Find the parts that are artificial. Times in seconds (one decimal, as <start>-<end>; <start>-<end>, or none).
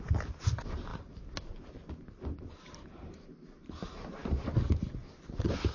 none